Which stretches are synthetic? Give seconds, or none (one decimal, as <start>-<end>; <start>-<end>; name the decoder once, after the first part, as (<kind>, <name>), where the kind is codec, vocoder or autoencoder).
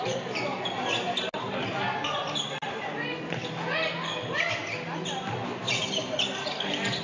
none